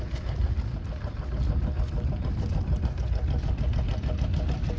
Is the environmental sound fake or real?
real